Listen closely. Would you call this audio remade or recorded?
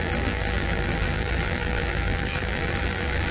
remade